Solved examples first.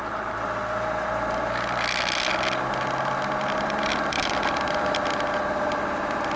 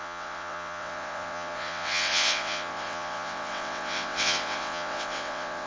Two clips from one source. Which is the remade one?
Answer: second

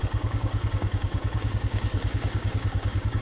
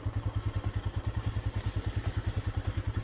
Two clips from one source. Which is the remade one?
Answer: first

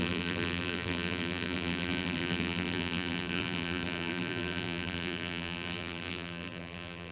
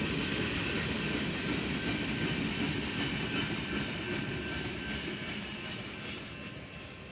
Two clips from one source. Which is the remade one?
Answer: first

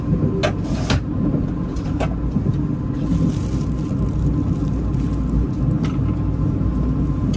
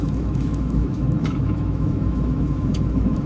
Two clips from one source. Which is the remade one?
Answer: second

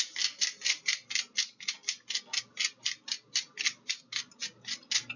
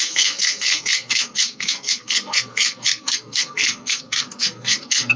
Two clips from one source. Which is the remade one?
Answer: second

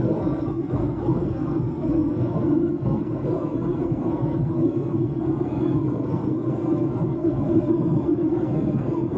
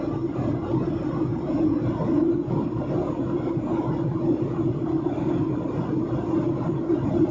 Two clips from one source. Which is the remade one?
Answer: first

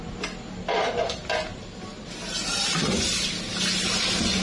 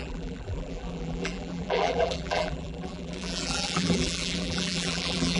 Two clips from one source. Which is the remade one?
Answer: second